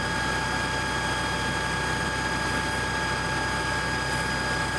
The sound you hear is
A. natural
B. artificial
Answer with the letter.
A